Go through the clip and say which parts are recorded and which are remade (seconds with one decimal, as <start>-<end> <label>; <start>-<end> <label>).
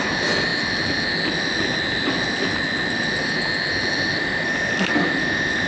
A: 0.0-5.7 recorded